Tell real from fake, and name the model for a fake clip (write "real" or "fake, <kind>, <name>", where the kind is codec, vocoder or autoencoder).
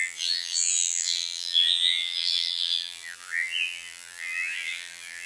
fake, vocoder, BigVGAN v2